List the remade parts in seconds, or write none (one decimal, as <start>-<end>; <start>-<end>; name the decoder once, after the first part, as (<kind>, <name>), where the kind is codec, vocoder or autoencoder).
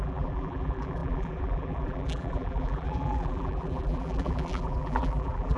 0.0-5.6 (vocoder, BigVGAN v2)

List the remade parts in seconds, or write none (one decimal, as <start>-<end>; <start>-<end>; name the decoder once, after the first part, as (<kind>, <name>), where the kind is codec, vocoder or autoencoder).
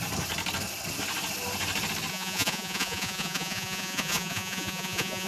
2.1-5.3 (vocoder, Vocos)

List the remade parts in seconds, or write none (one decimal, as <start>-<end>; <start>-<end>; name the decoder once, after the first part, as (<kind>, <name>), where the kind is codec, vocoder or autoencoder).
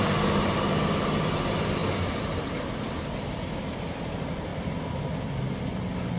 1.8-4.0 (vocoder, BigVGAN v2); 4.5-5.4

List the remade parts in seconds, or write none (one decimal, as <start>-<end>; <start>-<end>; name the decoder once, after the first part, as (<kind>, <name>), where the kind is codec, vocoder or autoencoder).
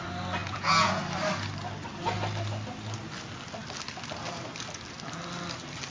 0.4-1.0 (vocoder, Vocos)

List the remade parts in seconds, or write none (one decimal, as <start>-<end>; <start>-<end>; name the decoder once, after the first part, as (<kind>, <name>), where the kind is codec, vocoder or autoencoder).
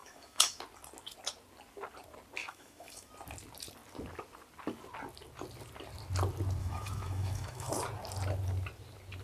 0.0-0.6 (autoencoder, DAC-VAE); 2.4-3.1; 6.6-7.7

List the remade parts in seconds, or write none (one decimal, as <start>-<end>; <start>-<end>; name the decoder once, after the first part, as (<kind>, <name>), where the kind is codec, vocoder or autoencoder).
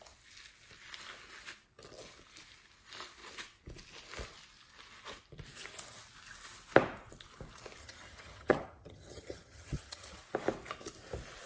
7.8-10.2 (vocoder, HiFi-GAN)